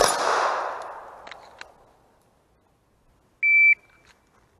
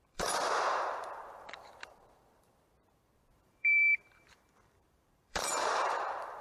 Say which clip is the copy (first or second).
second